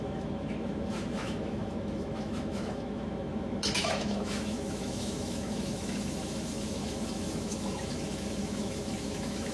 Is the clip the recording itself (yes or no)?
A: no